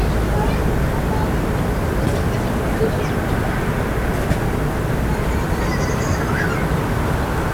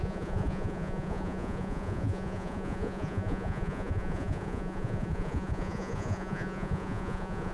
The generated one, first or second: second